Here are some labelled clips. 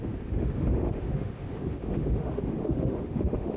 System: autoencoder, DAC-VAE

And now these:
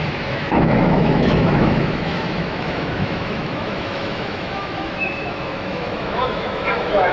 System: autoencoder, DAC-VAE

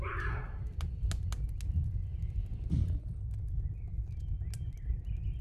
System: none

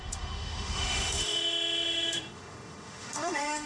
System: autoencoder, DAC-VAE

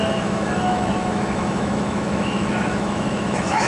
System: autoencoder, DAC-VAE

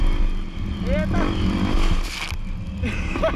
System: none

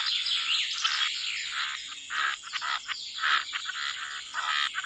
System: none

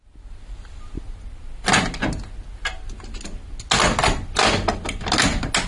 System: none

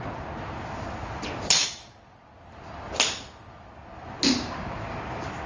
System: none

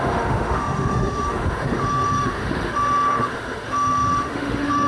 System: autoencoder, DAC-VAE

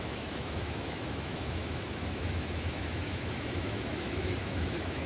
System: autoencoder, DAC-VAE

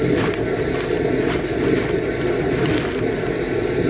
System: none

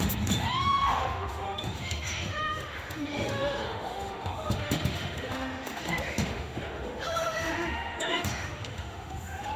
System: autoencoder, DAC-VAE